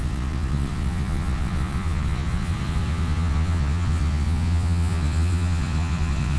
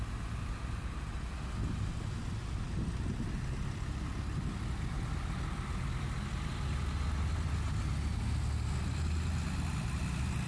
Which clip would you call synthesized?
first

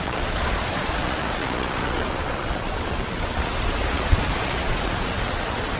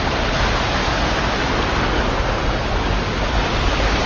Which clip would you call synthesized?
first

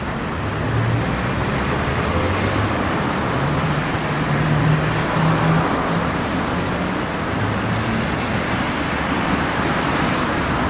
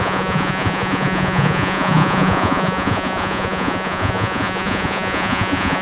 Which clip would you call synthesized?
second